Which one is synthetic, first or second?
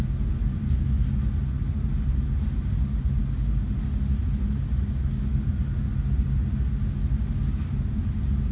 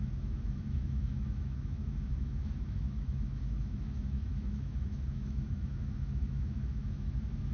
second